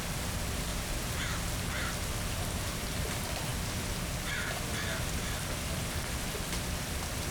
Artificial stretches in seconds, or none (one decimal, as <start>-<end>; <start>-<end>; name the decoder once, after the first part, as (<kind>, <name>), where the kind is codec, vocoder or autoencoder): 0.0-0.7 (vocoder, BigVGAN v2); 2.7-7.3